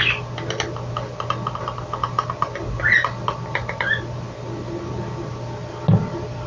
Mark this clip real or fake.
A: real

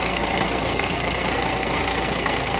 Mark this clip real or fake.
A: fake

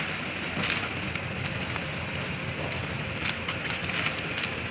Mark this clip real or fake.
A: real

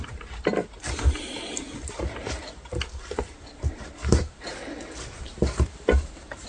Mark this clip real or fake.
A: real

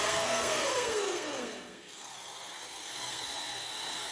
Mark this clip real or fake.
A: fake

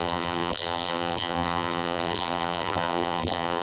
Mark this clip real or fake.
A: fake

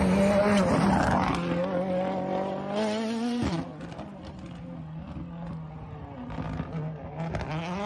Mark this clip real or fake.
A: real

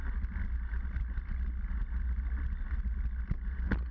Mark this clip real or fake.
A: real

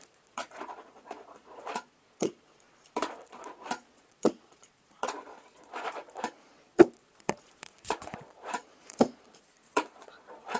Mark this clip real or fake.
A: fake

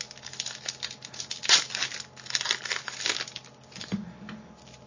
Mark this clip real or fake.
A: real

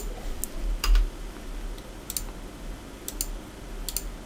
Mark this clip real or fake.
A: real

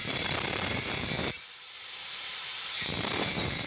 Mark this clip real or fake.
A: fake